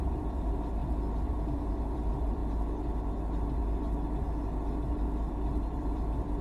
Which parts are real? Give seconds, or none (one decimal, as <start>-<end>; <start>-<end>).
0.8-1.8; 2.4-5.3